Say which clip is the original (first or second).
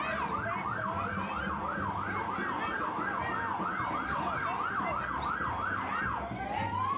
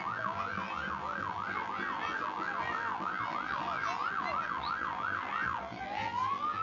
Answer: first